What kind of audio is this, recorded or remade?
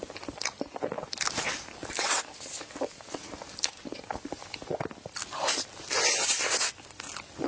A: recorded